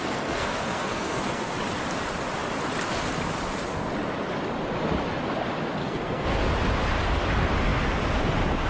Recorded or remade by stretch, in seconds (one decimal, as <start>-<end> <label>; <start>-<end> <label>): 0.0-1.5 remade; 1.5-5.8 recorded; 5.8-6.4 remade; 6.4-8.7 recorded